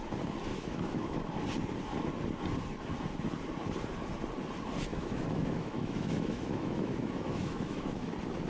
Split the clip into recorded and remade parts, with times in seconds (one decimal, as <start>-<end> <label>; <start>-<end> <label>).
0.0-0.5 recorded; 0.5-1.2 remade; 1.2-4.9 recorded; 4.9-8.1 remade; 8.1-8.5 recorded